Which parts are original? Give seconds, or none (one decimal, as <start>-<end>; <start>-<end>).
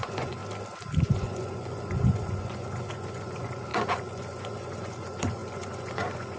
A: 0.4-1.0